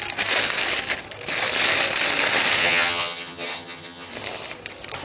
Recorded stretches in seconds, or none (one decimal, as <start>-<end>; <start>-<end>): 0.0-2.6; 4.1-5.0